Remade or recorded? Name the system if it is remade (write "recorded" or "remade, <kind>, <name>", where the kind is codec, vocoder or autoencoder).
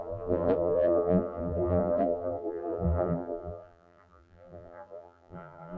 remade, vocoder, BigVGAN v2